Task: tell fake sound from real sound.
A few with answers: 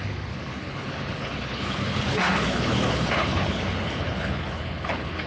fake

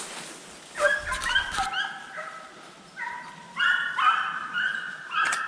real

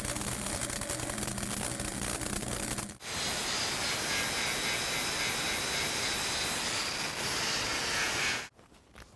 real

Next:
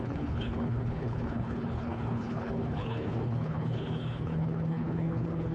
fake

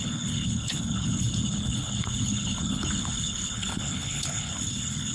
fake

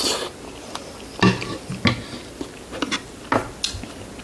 real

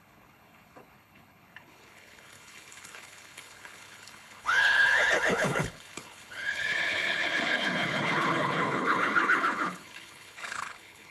fake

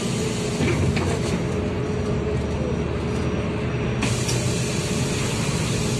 real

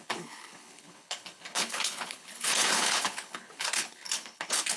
fake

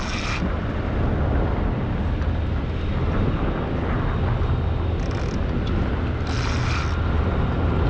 real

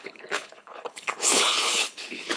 fake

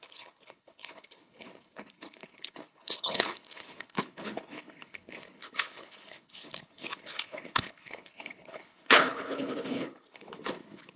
fake